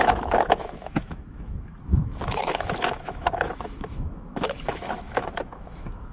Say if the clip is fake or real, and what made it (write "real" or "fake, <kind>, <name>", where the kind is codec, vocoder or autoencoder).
fake, autoencoder, DAC-VAE